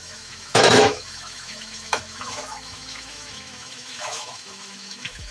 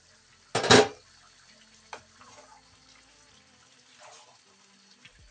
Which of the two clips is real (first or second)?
second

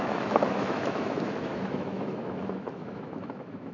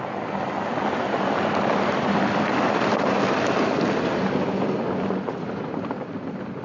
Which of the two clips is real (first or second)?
second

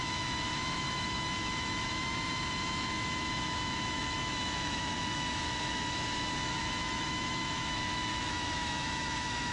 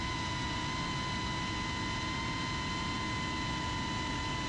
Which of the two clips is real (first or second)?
second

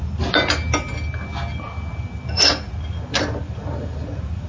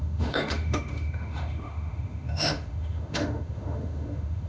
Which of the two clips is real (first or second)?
first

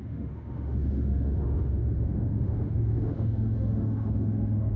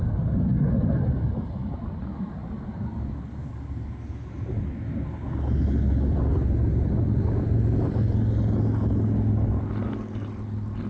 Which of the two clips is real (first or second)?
second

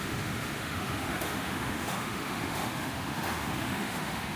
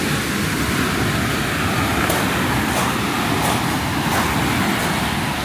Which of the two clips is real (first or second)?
second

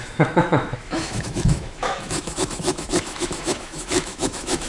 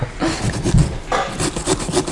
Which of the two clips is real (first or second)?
second